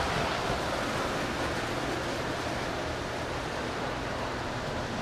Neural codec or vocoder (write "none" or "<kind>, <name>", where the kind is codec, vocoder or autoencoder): none